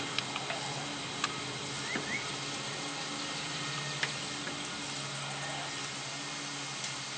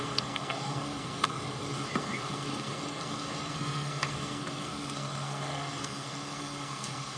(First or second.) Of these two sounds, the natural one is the first